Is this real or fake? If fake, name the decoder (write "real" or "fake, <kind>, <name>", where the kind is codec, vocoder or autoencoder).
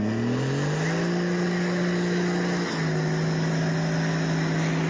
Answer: real